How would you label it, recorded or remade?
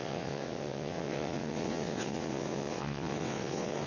remade